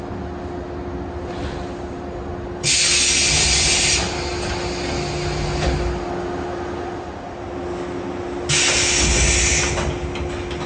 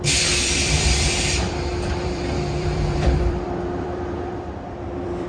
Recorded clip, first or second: first